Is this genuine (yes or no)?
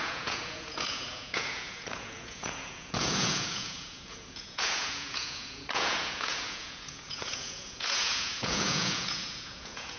no